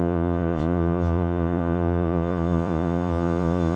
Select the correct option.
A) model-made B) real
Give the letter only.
A